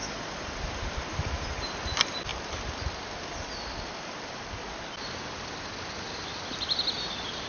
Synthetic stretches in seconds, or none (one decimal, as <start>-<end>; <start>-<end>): none